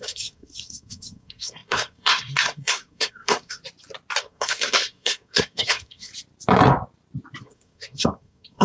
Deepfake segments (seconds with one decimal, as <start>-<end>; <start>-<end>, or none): 0.0-3.6; 4.2-6.1; 7.4-8.6